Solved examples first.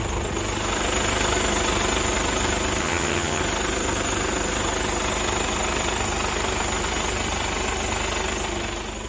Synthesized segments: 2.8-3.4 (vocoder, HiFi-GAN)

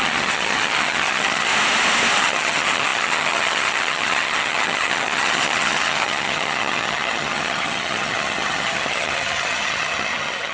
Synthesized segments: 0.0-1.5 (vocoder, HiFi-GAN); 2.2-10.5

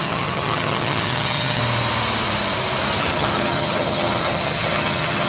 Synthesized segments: 0.0-1.6 (vocoder, HiFi-GAN); 3.0-5.3

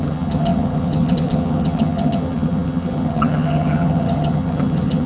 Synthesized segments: 0.0-5.1 (vocoder, HiFi-GAN)

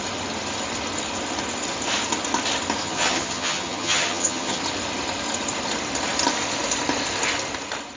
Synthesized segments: 2.8-4.6 (vocoder, HiFi-GAN)